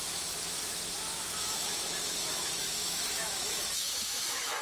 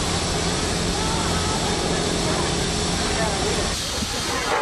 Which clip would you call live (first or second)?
second